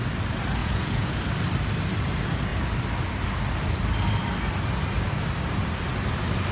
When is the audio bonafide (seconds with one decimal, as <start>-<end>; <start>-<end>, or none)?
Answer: 0.0-0.6; 1.2-6.5